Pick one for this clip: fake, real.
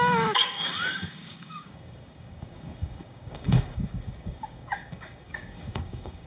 fake